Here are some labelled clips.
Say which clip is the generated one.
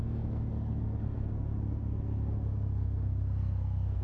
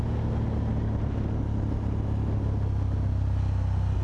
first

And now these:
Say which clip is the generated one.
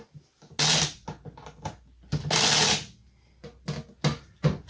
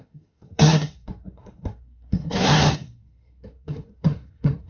second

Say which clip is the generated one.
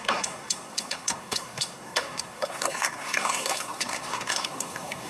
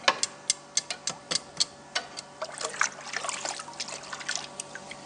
first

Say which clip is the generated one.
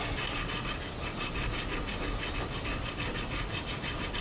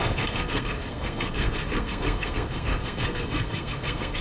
second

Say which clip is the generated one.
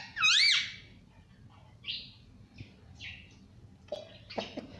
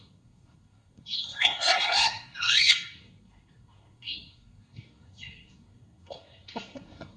second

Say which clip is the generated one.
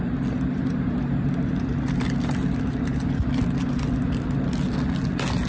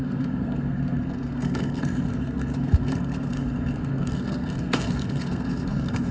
second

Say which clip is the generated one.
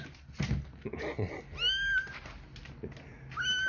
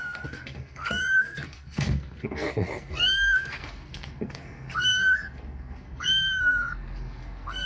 second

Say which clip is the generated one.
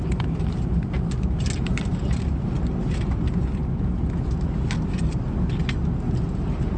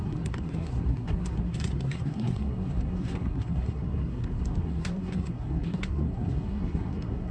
second